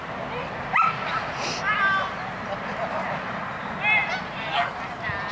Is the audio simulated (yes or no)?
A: no